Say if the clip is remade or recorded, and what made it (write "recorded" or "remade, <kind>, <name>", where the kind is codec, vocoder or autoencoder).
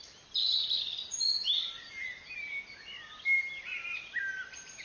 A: recorded